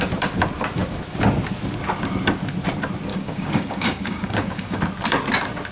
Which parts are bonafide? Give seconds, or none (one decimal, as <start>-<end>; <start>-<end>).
0.0-3.1; 4.8-5.7